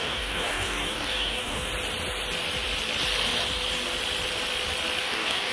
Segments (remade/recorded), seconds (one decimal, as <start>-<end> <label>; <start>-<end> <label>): 0.0-1.7 remade; 1.7-5.0 recorded; 5.0-5.5 remade